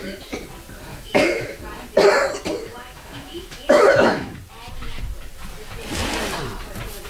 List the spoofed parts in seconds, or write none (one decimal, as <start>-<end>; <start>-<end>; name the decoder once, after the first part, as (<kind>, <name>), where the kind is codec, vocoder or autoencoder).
0.9-1.6 (autoencoder, DAC-VAE); 2.7-4.4